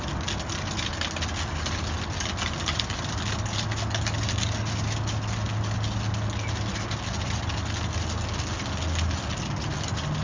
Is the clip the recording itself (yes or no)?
yes